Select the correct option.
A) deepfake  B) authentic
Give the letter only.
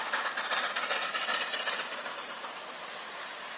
B